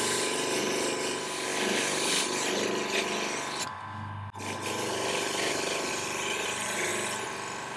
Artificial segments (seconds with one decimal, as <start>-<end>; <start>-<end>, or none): 0.0-1.5; 5.9-6.9